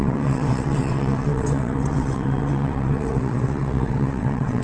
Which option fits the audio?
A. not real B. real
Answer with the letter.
A